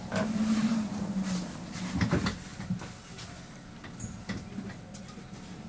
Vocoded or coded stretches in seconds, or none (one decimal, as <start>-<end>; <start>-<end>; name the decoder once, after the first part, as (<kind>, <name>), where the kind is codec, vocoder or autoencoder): none